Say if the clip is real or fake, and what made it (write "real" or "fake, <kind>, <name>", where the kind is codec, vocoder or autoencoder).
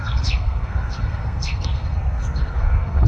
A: fake, codec, SNAC